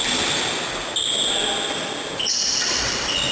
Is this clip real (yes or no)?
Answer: yes